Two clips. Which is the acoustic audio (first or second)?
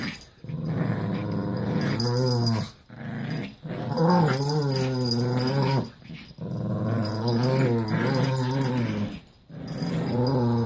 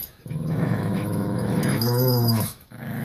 first